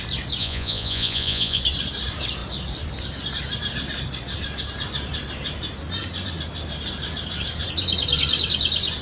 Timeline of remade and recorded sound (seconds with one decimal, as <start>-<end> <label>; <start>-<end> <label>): 0.0-0.4 recorded; 0.4-1.6 remade; 1.6-9.0 recorded